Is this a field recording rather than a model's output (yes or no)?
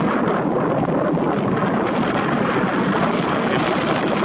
yes